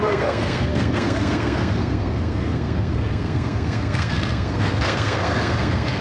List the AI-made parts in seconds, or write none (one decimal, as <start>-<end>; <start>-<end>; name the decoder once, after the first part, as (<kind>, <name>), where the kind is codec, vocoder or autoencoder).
0.0-6.0 (codec, SNAC)